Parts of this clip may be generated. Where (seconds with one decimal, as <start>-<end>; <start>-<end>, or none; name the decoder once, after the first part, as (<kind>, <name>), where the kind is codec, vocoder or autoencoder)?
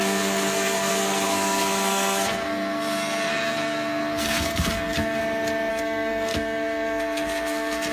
0.0-5.2 (codec, SNAC); 5.7-7.9